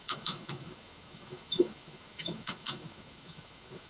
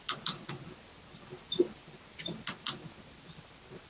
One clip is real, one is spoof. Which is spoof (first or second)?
first